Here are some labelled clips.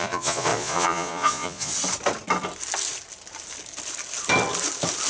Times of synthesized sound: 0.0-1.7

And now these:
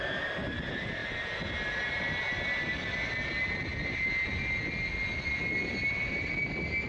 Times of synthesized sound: none

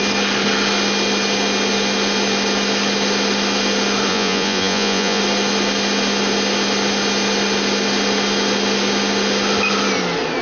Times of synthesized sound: 4.1-5.2